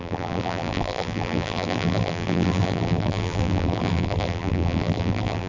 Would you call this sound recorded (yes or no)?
no